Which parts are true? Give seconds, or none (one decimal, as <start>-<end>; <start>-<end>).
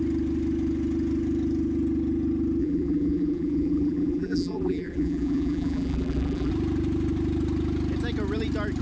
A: 0.0-2.6; 6.5-8.8